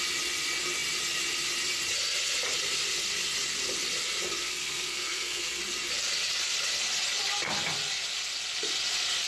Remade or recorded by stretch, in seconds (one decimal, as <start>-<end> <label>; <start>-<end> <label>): 0.0-4.4 recorded; 4.4-5.6 remade; 5.6-9.3 recorded